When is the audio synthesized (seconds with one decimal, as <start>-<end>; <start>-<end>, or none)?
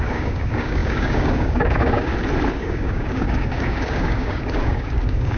0.0-2.1; 2.6-5.4